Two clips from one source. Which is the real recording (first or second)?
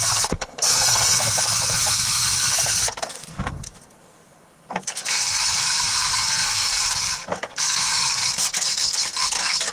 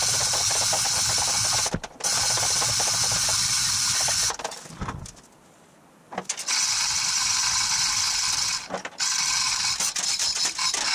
second